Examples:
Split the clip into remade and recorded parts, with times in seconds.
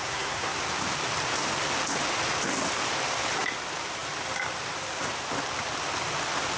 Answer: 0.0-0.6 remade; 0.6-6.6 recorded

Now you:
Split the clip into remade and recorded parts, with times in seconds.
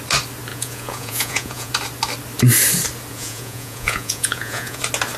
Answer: 0.0-0.5 recorded; 0.5-1.7 remade; 1.7-3.1 recorded; 3.1-4.8 remade; 4.8-5.2 recorded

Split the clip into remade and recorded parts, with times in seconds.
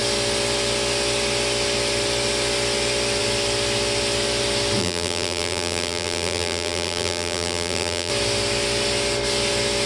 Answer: 0.0-4.8 recorded; 4.8-8.1 remade; 8.1-9.9 recorded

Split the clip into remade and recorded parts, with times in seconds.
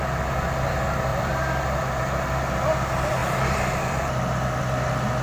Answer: 0.0-1.1 recorded; 1.1-2.0 remade; 2.0-3.2 recorded; 3.2-4.6 remade; 4.6-5.2 recorded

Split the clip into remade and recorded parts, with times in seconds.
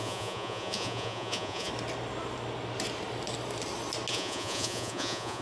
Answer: 0.0-1.7 remade; 1.7-4.1 recorded; 4.1-5.4 remade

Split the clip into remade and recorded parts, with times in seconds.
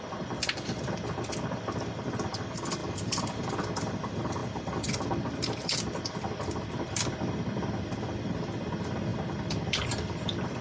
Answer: 0.0-2.8 recorded; 2.8-3.4 remade; 3.4-10.6 recorded